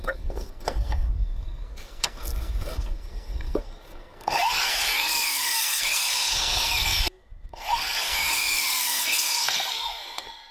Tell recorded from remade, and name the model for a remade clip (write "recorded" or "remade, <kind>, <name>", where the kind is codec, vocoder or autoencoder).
remade, codec, SNAC